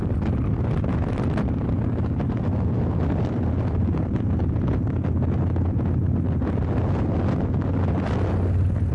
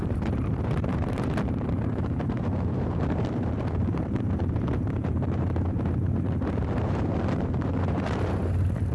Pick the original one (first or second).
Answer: first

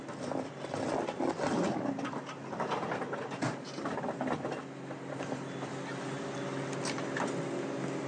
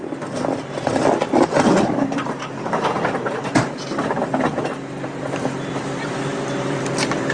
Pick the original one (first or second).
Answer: first